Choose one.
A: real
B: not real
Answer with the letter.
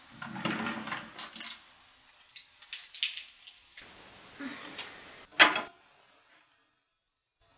A